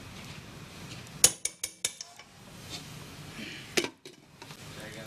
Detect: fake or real real